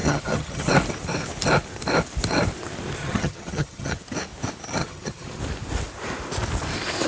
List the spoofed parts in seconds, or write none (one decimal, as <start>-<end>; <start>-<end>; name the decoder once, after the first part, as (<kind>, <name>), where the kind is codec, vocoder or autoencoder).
0.0-0.7 (vocoder, HiFi-GAN); 3.0-4.0; 4.8-5.4